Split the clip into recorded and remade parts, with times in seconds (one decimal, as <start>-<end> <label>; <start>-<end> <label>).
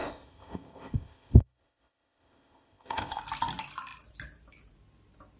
0.0-3.2 remade; 3.2-5.4 recorded